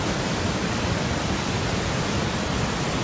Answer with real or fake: real